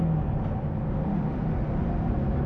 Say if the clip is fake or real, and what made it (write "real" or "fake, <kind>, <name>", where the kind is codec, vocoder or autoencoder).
real